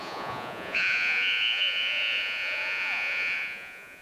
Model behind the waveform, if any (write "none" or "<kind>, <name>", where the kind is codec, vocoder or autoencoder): vocoder, Vocos